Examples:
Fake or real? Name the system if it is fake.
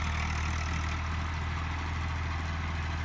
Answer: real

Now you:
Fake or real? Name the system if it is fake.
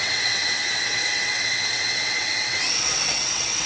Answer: fake, vocoder, WaveNeXt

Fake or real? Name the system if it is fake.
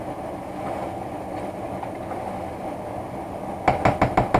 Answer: real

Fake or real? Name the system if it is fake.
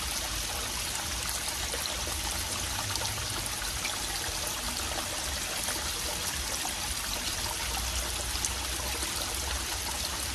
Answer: real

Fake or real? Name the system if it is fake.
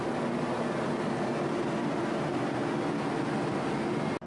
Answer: real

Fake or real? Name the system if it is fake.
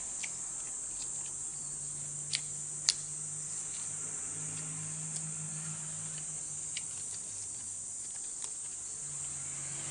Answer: real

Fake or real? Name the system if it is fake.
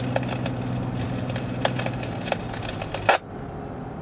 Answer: real